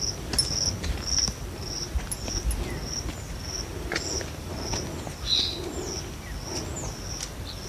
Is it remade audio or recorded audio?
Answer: recorded